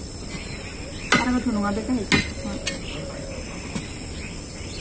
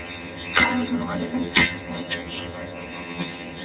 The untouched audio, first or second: first